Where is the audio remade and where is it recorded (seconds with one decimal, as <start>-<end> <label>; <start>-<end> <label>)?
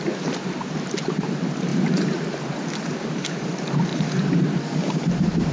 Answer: 0.0-3.9 remade; 3.9-4.9 recorded; 4.9-5.5 remade